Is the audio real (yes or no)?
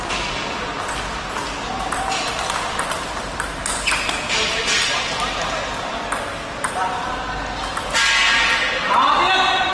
yes